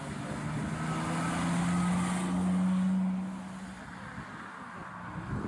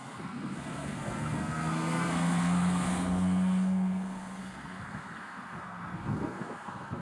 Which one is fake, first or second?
second